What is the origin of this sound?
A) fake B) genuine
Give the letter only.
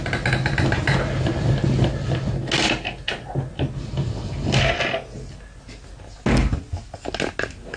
B